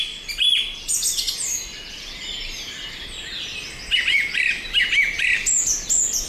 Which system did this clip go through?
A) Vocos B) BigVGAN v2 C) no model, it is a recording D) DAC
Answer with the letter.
C